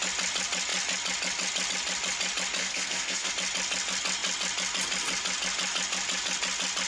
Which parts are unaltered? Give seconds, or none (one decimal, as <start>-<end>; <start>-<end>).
0.0-2.6; 3.3-6.9